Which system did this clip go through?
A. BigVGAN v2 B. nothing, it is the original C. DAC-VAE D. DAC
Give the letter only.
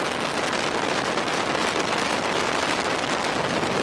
B